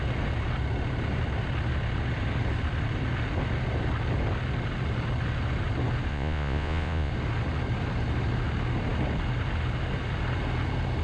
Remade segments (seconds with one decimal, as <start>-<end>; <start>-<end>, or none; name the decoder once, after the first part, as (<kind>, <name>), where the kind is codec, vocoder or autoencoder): 6.1-7.1 (vocoder, Vocos)